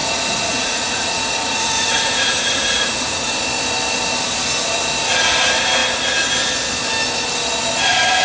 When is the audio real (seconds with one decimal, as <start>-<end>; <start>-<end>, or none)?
3.3-8.2